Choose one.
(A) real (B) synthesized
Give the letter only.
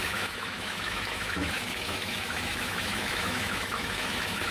B